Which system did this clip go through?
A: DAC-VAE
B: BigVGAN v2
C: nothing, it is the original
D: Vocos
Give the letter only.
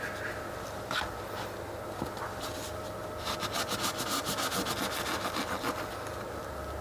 C